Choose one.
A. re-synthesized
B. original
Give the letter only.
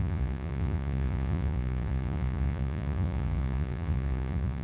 A